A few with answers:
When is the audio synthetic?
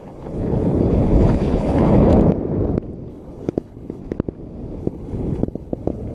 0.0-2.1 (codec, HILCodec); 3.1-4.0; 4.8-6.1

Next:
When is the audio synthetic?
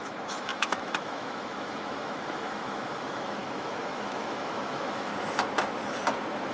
0.0-5.1 (autoencoder, DAC-VAE)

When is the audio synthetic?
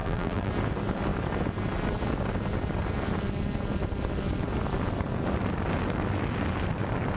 0.0-0.5 (vocoder, BigVGAN v2)